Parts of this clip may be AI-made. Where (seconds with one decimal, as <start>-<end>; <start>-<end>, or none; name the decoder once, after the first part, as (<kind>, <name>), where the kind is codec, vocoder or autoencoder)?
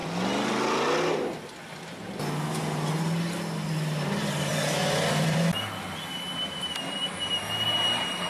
4.5-5.4 (vocoder, BigVGAN v2)